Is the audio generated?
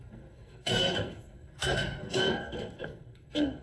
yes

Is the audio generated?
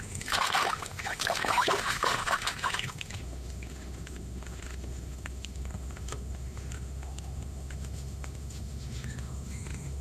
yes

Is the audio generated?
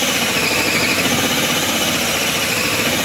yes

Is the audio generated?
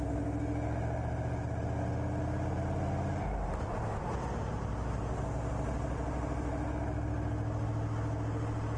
no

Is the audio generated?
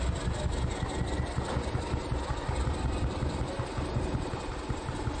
no